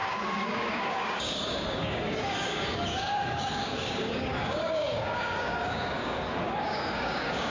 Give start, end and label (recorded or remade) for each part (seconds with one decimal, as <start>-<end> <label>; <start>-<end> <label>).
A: 0.0-7.5 remade

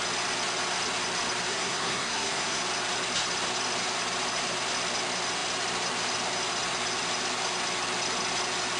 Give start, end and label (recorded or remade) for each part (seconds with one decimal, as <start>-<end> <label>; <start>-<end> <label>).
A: 0.0-1.5 recorded; 1.5-2.6 remade; 2.6-8.8 recorded

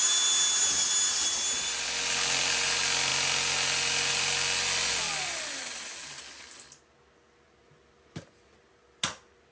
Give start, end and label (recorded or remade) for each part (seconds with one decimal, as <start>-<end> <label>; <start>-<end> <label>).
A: 0.0-9.5 recorded

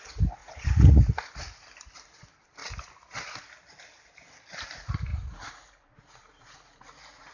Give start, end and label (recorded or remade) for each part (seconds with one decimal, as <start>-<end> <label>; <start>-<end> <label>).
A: 0.0-0.4 recorded; 0.4-1.0 remade; 1.0-5.1 recorded; 5.1-7.3 remade

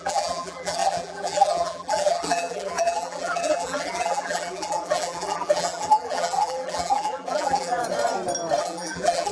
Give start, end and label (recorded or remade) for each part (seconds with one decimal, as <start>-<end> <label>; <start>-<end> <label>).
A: 0.0-7.8 remade; 7.8-8.6 recorded; 8.6-9.3 remade

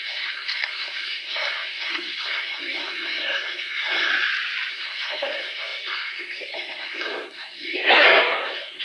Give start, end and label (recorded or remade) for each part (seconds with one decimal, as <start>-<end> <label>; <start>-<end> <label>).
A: 0.0-4.1 remade; 4.1-4.7 recorded; 4.7-8.8 remade